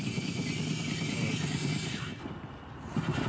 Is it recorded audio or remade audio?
recorded